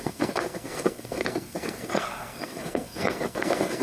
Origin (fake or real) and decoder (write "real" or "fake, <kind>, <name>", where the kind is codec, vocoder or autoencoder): fake, codec, SNAC